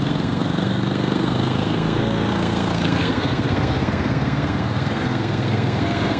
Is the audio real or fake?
fake